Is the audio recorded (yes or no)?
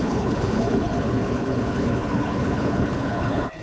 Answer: no